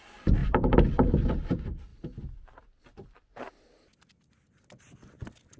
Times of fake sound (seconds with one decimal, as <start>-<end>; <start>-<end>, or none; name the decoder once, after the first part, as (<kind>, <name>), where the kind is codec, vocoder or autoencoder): none